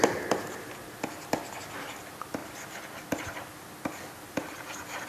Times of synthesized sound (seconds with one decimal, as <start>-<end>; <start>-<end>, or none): none